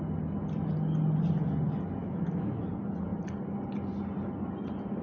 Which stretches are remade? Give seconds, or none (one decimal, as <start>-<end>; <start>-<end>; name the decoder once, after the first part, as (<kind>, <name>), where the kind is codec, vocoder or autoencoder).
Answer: 2.0-2.6 (autoencoder, DAC-VAE)